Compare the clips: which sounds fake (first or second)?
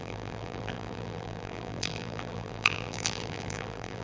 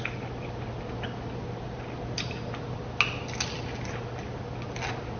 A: first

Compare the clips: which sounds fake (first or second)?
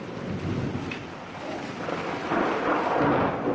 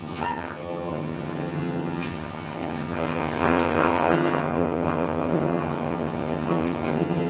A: second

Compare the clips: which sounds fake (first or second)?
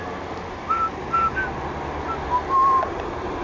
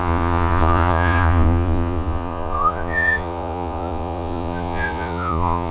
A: second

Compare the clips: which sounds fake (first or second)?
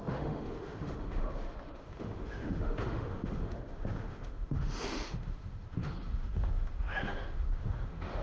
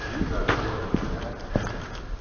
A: first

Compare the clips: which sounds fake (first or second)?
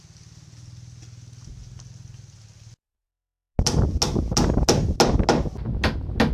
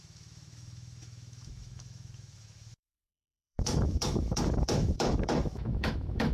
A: second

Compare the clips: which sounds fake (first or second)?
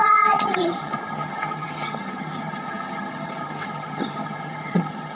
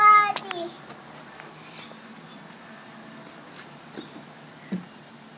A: first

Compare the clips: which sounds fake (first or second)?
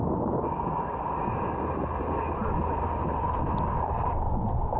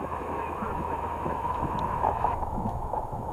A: second